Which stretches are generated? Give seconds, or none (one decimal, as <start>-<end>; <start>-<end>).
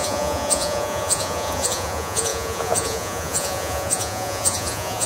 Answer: 0.0-5.1